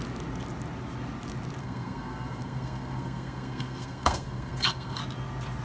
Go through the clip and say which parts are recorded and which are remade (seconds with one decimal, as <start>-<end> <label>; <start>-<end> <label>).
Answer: 0.0-1.6 recorded; 1.6-5.0 remade; 5.0-5.6 recorded